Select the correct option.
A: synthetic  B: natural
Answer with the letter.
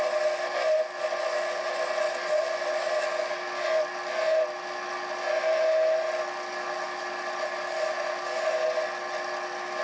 B